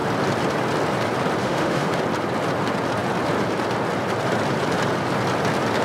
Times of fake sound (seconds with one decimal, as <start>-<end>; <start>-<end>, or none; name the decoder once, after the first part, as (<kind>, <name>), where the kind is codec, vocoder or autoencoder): 1.4-2.0 (autoencoder, DAC-VAE)

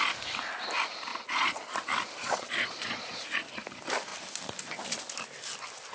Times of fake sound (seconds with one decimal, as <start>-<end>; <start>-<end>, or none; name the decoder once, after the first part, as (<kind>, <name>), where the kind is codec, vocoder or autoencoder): 1.1-1.7 (vocoder, Vocos); 2.2-3.2

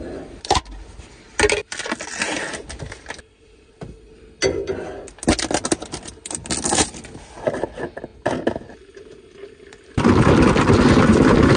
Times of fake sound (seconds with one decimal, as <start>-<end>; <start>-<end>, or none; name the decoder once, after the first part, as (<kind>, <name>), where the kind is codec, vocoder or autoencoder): none